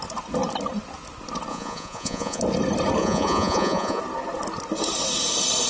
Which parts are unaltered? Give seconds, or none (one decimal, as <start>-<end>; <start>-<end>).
0.0-1.5; 2.4-3.0; 4.0-5.7